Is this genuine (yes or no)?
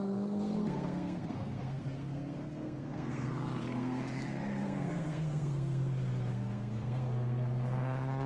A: no